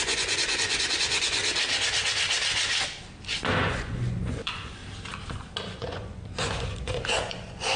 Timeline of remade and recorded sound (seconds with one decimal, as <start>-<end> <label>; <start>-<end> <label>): 0.0-1.4 remade; 1.4-3.6 recorded; 3.6-4.8 remade; 4.8-5.6 recorded; 5.6-7.8 remade